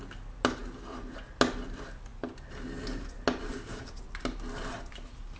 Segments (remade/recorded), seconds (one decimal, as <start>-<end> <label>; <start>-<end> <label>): 0.0-5.4 recorded